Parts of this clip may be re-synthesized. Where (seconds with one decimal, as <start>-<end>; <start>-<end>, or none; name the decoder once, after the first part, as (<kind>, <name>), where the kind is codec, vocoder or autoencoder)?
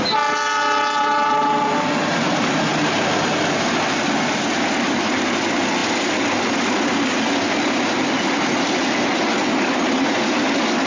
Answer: none